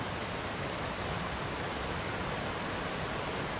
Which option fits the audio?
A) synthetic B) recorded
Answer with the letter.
B